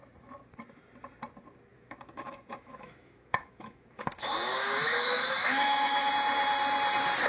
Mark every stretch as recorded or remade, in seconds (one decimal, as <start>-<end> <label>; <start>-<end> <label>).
0.0-1.7 recorded; 1.7-6.1 remade; 6.1-7.3 recorded